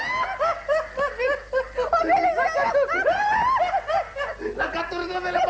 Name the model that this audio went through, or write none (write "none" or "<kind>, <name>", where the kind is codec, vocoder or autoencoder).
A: none